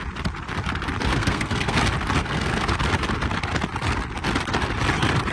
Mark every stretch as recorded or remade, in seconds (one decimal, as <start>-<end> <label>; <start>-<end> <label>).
0.0-1.1 recorded; 1.1-1.8 remade; 1.8-2.2 recorded; 2.2-2.8 remade; 2.8-5.3 recorded